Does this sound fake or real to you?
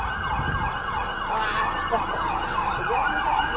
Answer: real